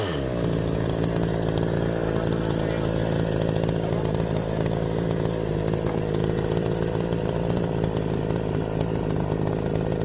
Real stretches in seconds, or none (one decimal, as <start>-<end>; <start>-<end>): 0.0-6.2; 8.6-10.0